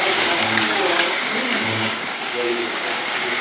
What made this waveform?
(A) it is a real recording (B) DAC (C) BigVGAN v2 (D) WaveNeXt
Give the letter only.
B